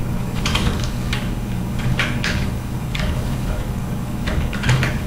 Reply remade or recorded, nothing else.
remade